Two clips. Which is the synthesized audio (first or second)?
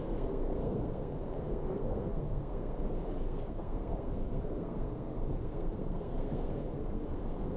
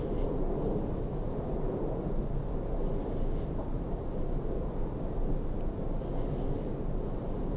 first